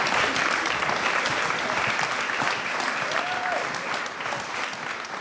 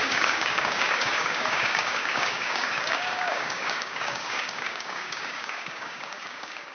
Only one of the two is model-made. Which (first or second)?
second